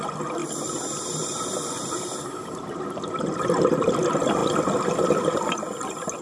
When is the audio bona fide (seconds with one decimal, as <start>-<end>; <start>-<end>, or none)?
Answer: 0.0-0.4; 3.2-6.2